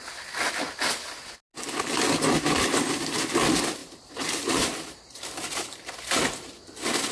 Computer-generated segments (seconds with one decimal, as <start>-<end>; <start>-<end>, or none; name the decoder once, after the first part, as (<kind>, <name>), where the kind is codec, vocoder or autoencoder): 3.8-5.9 (vocoder, BigVGAN v2)